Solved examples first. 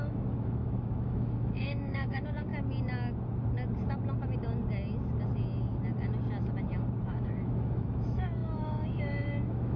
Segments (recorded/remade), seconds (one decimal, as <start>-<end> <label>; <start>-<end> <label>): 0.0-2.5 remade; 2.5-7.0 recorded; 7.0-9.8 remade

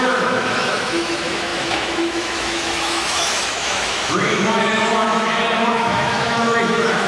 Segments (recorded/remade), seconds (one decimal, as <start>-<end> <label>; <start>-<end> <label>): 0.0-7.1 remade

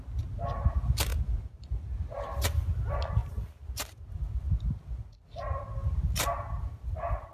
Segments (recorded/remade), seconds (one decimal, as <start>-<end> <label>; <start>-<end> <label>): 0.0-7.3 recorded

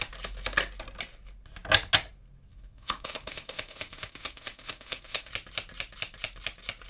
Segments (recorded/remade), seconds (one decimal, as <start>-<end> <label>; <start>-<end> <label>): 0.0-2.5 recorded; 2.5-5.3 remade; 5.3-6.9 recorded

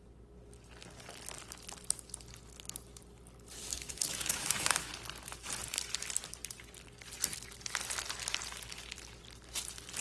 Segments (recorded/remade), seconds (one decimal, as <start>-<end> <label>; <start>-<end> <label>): 0.0-3.6 recorded; 3.6-4.9 remade; 4.9-10.0 recorded

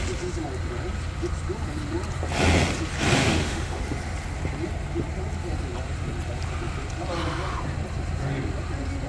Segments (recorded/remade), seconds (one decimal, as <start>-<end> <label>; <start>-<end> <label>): 0.0-3.2 recorded; 3.2-3.8 remade; 3.8-9.1 recorded